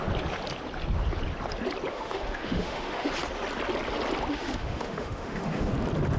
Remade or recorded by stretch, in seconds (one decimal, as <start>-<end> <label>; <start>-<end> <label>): 0.0-1.9 recorded; 1.9-3.1 remade; 3.1-4.3 recorded; 4.3-5.7 remade; 5.7-6.2 recorded